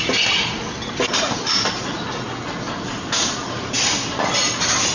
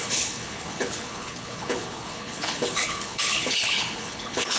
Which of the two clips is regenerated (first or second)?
second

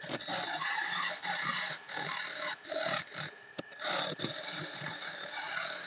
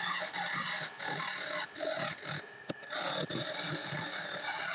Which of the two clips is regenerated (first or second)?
first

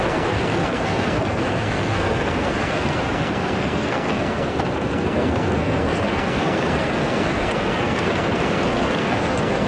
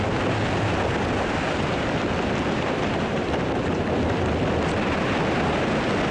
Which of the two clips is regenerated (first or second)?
first